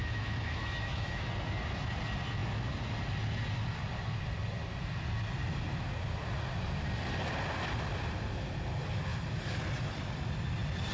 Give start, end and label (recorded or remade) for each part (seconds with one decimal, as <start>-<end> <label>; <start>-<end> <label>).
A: 0.0-1.3 remade; 1.3-10.9 recorded